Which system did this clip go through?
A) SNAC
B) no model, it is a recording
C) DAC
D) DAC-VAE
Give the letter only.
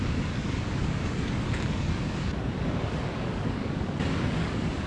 C